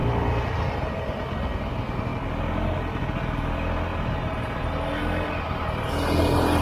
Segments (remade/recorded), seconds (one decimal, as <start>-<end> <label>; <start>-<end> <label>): 0.0-6.6 recorded